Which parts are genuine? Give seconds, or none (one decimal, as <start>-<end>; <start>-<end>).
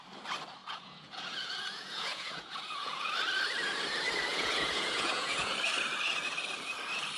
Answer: 0.0-0.6; 3.1-4.3; 5.5-7.2